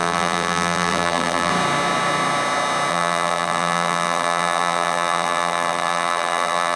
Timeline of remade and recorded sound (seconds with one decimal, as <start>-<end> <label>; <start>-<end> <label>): 0.0-1.5 remade; 1.5-2.9 recorded; 2.9-6.8 remade